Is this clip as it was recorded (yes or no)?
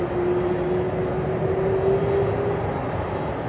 yes